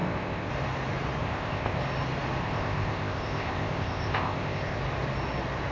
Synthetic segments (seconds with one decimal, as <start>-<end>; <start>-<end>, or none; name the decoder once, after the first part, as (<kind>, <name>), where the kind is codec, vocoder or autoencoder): 0.0-0.5 (codec, ZipCodec); 1.2-1.8; 2.4-4.8